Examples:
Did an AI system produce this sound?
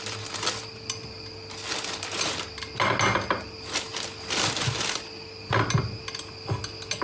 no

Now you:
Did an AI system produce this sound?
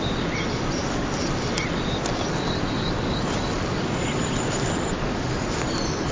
no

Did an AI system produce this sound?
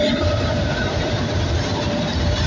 no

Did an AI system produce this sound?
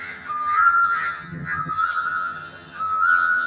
yes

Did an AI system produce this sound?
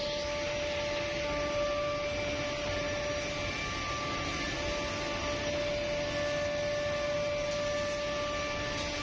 no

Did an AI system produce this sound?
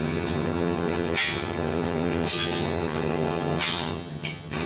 yes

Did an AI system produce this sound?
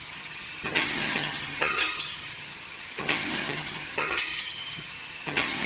yes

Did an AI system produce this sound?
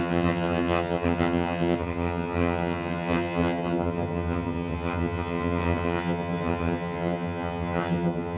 yes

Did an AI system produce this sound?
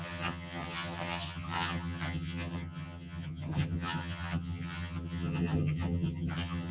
yes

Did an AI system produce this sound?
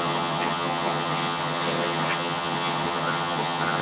yes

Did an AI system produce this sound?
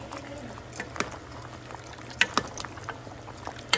no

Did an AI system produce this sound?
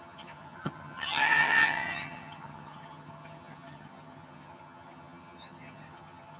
yes